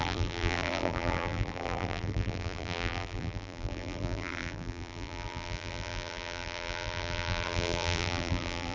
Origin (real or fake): fake